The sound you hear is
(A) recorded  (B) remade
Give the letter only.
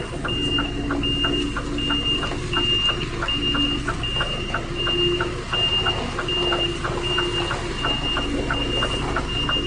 A